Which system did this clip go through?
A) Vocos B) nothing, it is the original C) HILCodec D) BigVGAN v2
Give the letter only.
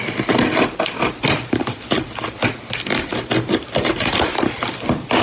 B